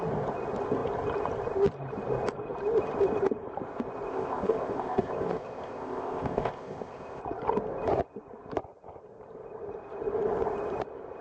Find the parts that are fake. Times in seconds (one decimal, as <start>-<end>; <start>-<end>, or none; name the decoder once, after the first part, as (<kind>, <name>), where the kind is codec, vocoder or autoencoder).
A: 4.1-7.2 (codec, ZipCodec)